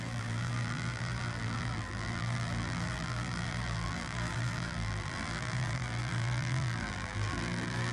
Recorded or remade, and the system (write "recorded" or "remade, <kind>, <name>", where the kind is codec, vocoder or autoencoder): remade, vocoder, BigVGAN v2